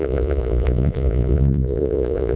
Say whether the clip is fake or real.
fake